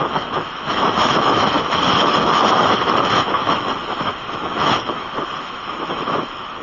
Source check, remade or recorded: remade